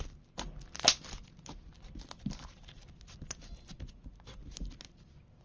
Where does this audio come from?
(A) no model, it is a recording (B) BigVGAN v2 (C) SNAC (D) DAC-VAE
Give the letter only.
A